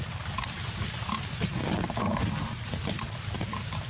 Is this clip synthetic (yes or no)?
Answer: no